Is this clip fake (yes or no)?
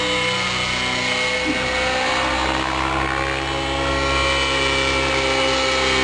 no